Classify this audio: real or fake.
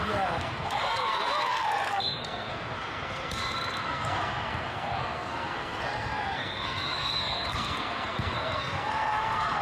fake